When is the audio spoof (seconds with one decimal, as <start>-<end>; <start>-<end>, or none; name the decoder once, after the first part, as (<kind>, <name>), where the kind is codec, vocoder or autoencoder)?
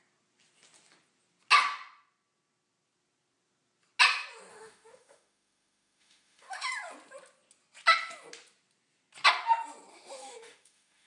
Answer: 4.5-6.7 (autoencoder, DAC-VAE); 9.9-11.1